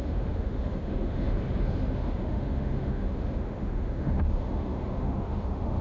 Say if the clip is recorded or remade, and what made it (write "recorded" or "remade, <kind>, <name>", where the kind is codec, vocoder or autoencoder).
remade, autoencoder, DAC-VAE